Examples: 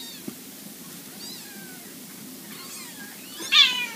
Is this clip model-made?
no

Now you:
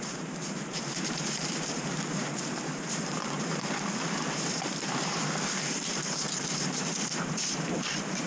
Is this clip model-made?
yes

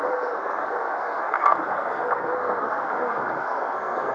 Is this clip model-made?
yes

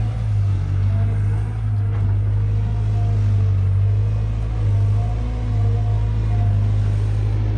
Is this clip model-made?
no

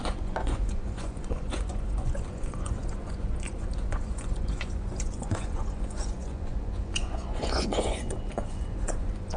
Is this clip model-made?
yes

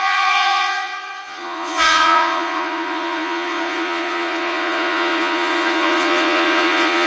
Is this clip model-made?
yes